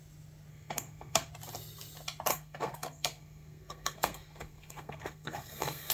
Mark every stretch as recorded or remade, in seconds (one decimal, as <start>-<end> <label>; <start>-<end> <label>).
0.0-0.5 recorded; 0.5-1.3 remade; 1.3-2.3 recorded; 2.3-5.9 remade